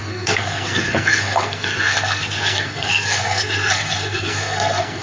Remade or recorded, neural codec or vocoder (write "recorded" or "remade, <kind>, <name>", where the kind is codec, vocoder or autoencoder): remade, codec, SNAC